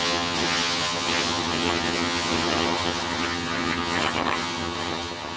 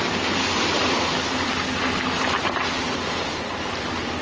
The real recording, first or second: second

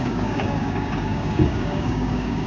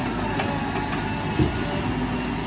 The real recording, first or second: second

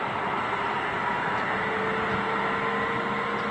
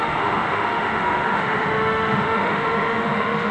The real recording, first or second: first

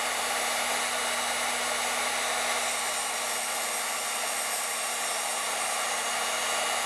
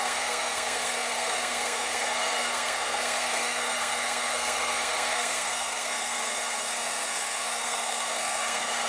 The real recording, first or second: first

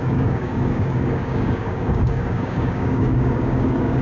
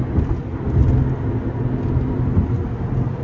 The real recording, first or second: second